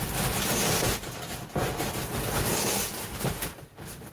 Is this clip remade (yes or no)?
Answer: no